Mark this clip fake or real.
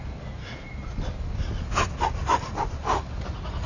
real